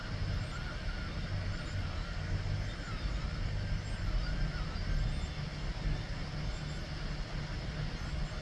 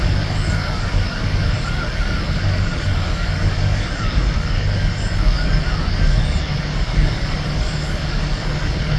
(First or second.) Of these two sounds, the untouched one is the first